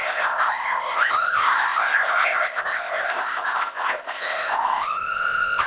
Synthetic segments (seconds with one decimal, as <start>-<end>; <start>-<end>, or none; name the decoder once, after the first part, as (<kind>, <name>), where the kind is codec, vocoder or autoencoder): 0.0-5.7 (codec, ZipCodec)